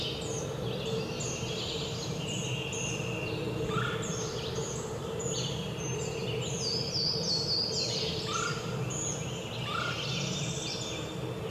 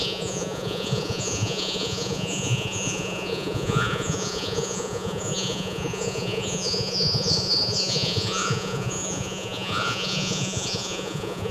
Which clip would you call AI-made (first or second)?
second